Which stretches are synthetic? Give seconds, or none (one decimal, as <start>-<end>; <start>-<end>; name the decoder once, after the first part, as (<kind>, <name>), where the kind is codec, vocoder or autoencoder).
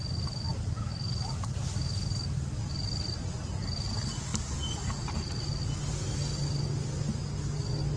none